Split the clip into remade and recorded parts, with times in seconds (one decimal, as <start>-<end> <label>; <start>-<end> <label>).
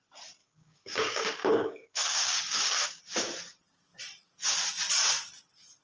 0.0-0.4 recorded; 0.4-3.0 remade; 3.0-5.8 recorded